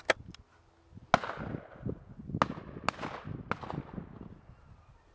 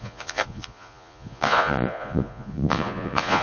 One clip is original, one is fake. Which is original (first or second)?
first